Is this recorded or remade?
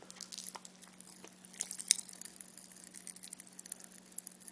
recorded